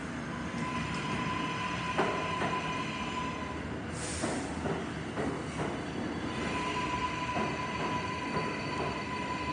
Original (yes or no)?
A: yes